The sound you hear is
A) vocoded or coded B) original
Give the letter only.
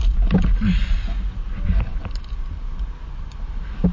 B